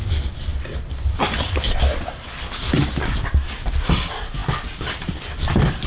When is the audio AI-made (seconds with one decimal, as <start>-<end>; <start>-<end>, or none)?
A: none